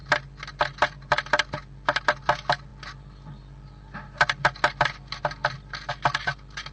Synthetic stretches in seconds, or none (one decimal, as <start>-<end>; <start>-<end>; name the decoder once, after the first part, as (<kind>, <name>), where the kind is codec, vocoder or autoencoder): none